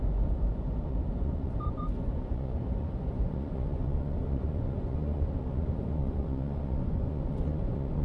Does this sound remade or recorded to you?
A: remade